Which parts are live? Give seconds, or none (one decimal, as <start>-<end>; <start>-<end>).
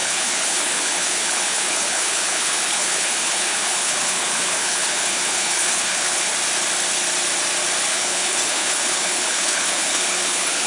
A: 6.3-7.9